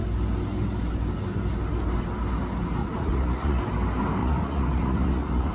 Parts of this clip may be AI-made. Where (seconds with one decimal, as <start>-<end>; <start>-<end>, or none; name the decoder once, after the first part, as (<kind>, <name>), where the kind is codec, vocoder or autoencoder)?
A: 2.8-3.6 (vocoder, Vocos); 4.2-5.5